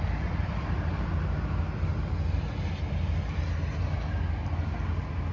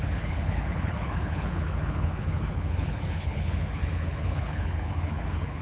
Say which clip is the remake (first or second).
second